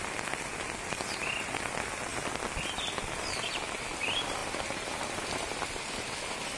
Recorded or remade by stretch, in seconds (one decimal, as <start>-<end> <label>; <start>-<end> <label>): 0.0-6.6 recorded